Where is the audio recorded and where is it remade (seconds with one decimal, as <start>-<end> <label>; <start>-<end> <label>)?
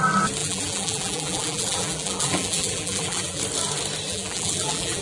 0.0-0.4 recorded; 0.4-3.4 remade; 3.4-4.1 recorded; 4.1-5.0 remade